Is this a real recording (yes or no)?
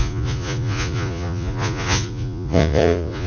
no